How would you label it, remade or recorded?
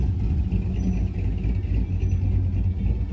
recorded